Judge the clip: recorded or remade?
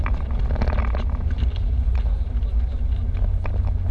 recorded